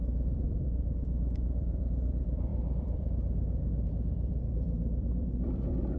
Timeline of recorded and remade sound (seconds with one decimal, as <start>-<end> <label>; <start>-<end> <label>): 0.0-6.0 remade